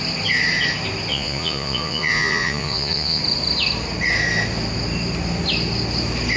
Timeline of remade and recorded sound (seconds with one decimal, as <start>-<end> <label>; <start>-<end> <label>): 0.0-1.1 recorded; 1.1-3.2 remade; 3.2-6.4 recorded